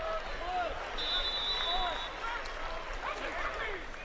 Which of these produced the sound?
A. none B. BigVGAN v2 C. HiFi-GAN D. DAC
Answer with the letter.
A